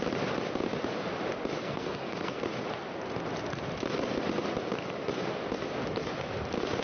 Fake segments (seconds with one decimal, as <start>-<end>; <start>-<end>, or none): 1.6-2.4